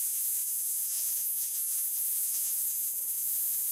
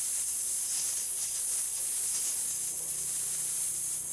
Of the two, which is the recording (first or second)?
second